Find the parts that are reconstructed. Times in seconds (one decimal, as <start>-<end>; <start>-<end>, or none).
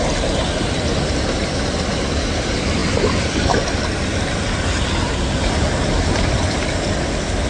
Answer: none